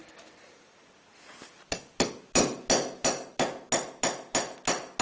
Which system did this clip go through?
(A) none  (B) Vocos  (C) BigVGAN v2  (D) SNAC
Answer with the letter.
A